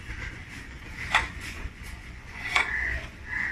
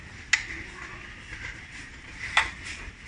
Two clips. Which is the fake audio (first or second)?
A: first